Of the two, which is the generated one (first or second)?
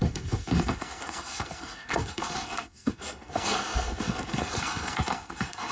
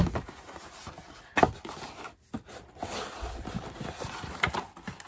first